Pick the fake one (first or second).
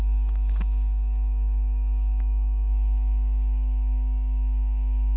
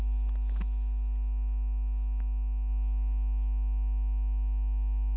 first